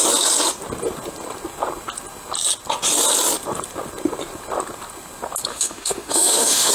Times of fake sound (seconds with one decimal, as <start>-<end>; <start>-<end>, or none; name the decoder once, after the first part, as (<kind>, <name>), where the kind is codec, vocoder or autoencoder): 5.5-6.7 (autoencoder, DAC-VAE)